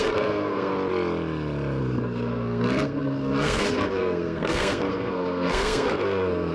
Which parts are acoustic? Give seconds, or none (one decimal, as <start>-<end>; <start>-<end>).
0.7-1.8